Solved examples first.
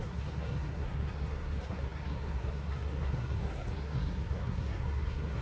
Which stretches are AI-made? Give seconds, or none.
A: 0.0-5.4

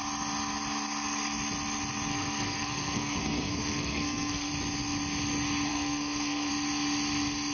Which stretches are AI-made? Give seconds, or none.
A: 2.1-4.5; 5.7-6.5